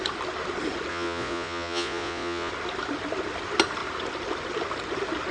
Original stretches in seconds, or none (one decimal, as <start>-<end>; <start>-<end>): 0.0-0.9; 2.5-5.3